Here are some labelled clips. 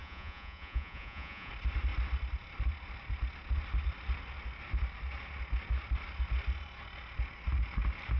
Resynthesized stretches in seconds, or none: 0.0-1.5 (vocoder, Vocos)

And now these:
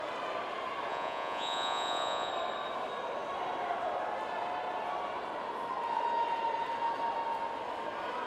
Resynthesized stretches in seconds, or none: 0.9-2.3 (vocoder, Vocos)

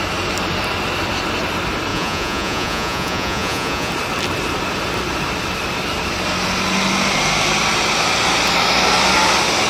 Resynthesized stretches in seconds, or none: 1.9-3.9 (vocoder, Vocos)

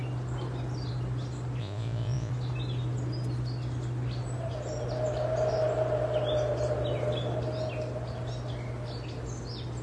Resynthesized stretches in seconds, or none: 1.6-2.3 (vocoder, Vocos)